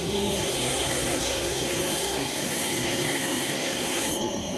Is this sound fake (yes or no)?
yes